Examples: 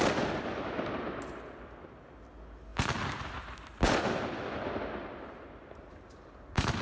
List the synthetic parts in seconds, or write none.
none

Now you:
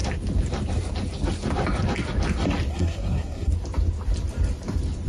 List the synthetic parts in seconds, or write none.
2.7-3.5 (codec, SNAC)

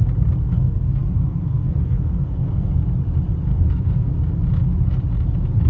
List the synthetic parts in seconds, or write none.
0.4-2.8 (codec, SNAC); 3.5-4.1

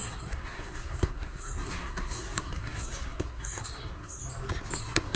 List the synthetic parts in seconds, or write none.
0.0-4.2 (codec, SNAC); 4.8-5.2

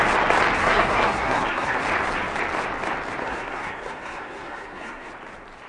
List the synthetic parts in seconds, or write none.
0.6-1.8 (codec, SNAC); 3.2-5.1

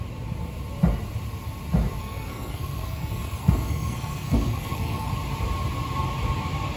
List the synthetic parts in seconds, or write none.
2.0-5.1 (codec, SNAC)